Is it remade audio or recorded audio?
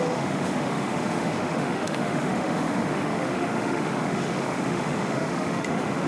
remade